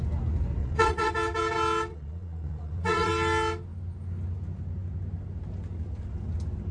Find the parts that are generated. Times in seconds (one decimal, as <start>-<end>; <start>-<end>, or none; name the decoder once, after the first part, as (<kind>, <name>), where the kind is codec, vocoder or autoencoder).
0.6-1.1 (vocoder, Vocos); 1.9-3.1